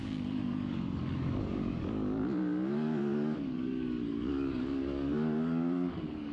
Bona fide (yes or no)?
no